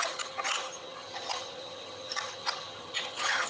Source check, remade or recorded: remade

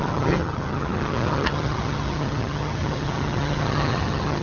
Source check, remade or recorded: remade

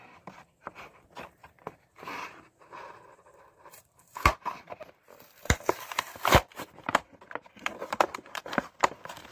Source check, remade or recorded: remade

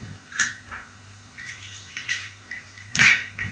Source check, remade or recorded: remade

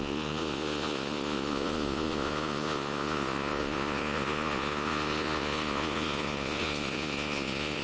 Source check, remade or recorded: remade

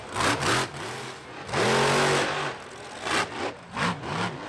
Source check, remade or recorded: recorded